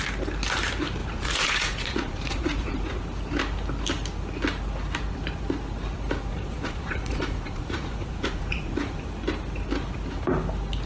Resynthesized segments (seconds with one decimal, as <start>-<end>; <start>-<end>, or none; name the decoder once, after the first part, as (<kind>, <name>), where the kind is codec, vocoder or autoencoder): 1.0-3.0 (vocoder, Vocos); 6.3-9.0